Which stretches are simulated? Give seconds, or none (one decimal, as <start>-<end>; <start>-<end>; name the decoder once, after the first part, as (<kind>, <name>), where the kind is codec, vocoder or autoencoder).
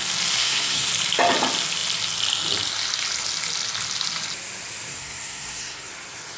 0.4-0.9 (codec, SNAC); 4.9-5.9